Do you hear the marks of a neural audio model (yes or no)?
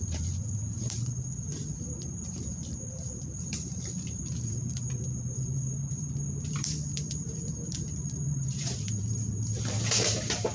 yes